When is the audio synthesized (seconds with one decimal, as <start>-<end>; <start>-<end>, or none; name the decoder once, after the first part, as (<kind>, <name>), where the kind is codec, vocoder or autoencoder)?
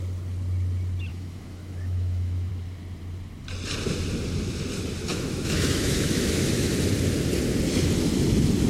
1.1-2.5 (autoencoder, DAC-VAE); 5.1-6.7